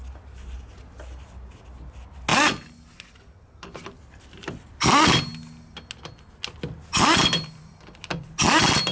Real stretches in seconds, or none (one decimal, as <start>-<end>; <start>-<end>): 0.0-8.9